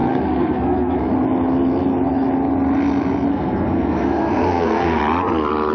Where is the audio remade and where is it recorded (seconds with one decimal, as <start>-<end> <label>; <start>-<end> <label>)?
0.0-1.1 remade; 1.1-3.3 recorded; 3.3-5.0 remade; 5.0-5.7 recorded